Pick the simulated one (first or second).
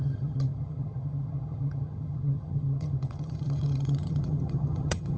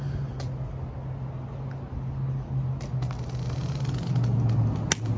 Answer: first